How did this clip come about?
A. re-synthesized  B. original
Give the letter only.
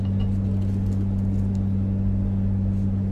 B